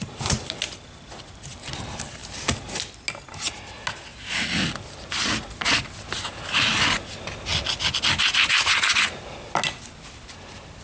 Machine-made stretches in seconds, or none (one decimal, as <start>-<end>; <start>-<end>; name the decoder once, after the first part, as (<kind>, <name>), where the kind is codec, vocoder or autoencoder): none